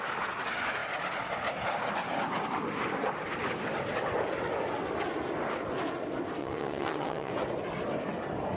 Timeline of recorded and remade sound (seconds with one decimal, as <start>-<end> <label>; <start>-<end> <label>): 0.0-6.4 recorded; 6.4-7.3 remade; 7.3-8.6 recorded